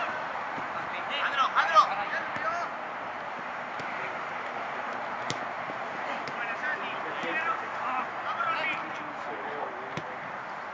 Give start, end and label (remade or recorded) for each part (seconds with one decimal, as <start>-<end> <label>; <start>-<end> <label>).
0.0-10.7 recorded